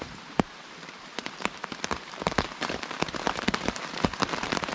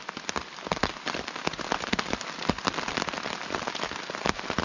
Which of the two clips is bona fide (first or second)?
second